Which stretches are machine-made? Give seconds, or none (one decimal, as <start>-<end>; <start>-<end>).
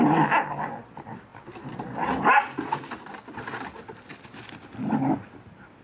none